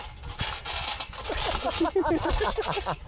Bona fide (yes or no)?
yes